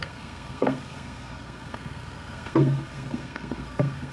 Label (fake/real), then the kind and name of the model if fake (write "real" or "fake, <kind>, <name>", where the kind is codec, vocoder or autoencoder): fake, codec, SNAC